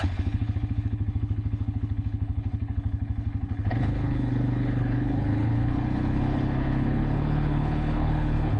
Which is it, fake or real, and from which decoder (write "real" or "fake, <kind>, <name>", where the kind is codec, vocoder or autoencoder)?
fake, codec, HILCodec